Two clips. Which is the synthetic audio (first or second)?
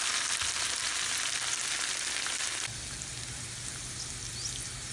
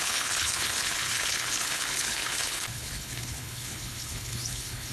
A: second